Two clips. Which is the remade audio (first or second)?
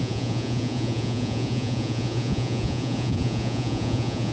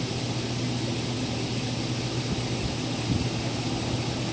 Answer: first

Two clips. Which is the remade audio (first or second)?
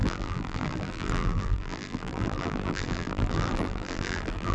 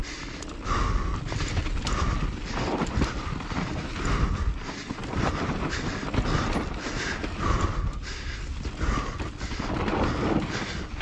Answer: first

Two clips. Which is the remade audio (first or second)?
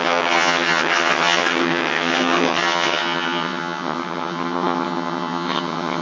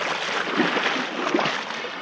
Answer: first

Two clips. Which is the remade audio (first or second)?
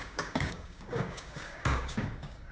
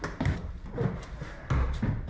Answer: first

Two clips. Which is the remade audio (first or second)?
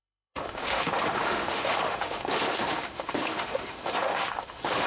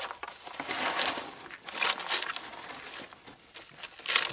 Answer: first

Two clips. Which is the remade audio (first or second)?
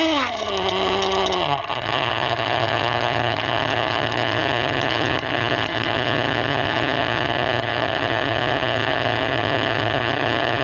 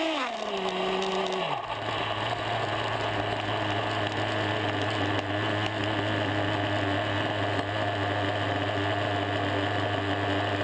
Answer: first